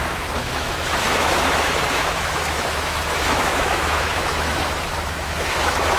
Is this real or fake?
fake